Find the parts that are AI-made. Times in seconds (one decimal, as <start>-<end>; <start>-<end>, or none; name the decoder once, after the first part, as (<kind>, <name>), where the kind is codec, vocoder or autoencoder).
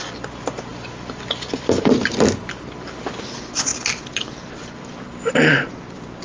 none